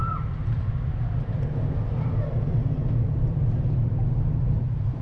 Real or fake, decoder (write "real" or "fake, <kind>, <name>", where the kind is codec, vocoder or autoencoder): fake, vocoder, BigVGAN v2